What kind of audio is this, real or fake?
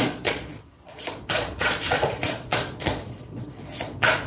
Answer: fake